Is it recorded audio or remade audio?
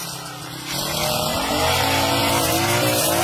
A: recorded